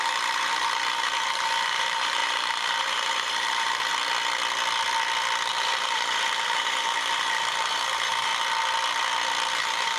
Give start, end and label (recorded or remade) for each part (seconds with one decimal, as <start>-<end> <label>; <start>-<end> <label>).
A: 0.0-3.9 remade; 3.9-5.5 recorded; 5.5-8.3 remade; 8.3-9.5 recorded; 9.5-10.0 remade